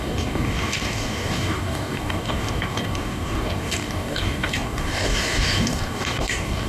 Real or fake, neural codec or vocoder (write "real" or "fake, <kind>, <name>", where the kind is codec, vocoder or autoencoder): fake, codec, DAC